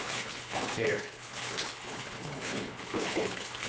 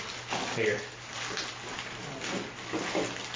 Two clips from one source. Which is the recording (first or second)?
second